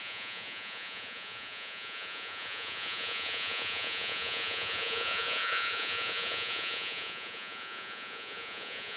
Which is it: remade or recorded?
remade